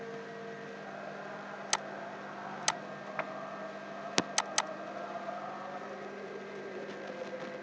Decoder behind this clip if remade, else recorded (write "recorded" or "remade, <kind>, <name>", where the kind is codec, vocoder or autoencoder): recorded